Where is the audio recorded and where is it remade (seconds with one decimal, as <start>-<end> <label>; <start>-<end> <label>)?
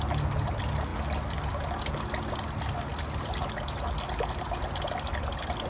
0.0-5.7 recorded